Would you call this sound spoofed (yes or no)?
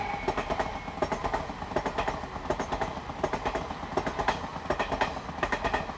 no